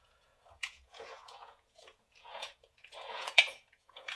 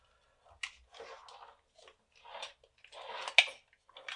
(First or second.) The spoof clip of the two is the first